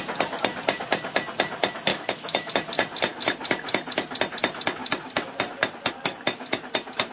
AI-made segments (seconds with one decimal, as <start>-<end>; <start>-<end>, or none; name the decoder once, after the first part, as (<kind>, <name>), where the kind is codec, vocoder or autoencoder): 1.9-2.5 (autoencoder, DAC-VAE)